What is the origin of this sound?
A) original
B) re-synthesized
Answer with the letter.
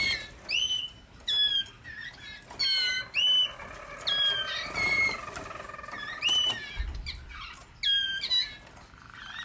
A